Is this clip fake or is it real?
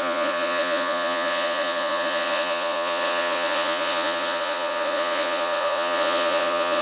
fake